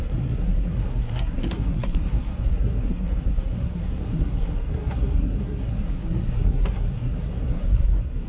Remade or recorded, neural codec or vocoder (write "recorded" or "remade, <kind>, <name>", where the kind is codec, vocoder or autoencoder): remade, codec, SNAC